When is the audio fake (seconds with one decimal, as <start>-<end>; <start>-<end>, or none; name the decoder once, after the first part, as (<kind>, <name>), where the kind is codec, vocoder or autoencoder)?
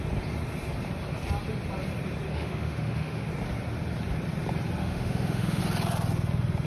2.3-3.3 (autoencoder, DAC-VAE); 4.8-5.6